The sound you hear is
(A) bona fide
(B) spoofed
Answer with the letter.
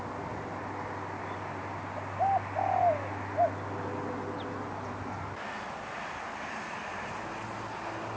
A